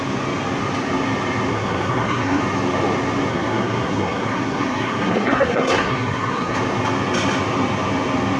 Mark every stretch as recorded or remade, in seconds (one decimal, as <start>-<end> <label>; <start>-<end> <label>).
0.0-1.5 recorded; 1.5-2.4 remade; 2.4-3.3 recorded; 3.3-6.6 remade; 6.6-8.4 recorded